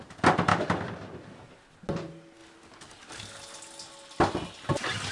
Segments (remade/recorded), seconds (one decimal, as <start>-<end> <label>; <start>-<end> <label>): 0.0-5.1 recorded